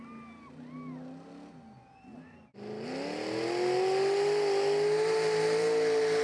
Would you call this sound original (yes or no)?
yes